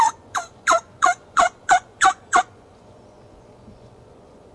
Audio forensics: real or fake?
fake